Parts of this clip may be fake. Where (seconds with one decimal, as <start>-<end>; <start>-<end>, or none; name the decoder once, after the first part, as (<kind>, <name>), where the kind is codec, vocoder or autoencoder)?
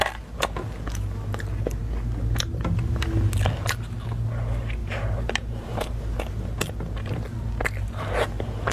4.8-6.0 (vocoder, BigVGAN v2)